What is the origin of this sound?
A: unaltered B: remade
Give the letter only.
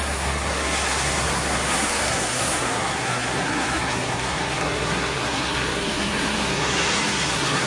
B